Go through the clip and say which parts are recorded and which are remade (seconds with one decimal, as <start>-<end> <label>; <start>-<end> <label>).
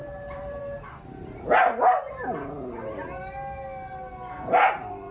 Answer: 0.0-0.6 remade; 0.6-5.1 recorded